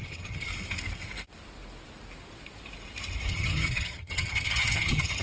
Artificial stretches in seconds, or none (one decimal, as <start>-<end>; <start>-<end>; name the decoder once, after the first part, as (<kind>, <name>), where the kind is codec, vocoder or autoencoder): 0.0-0.5 (vocoder, HiFi-GAN); 3.3-5.2